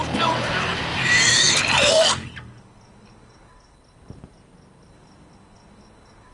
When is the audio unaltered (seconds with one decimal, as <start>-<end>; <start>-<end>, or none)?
0.0-0.9; 1.9-6.3